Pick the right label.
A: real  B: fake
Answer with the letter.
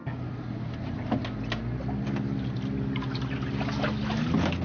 A